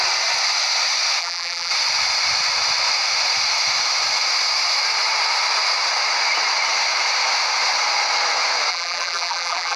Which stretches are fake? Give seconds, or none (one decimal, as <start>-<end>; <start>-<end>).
1.2-1.7; 8.7-9.8